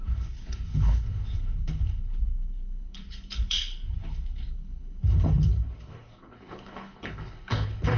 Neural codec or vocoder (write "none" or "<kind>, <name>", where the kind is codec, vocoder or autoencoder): codec, HILCodec